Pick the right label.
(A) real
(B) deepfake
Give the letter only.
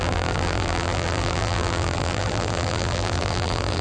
B